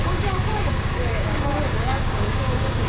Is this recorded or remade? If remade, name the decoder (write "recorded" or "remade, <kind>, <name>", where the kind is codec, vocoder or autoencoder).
remade, codec, DAC